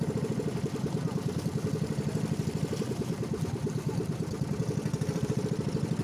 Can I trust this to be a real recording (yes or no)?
no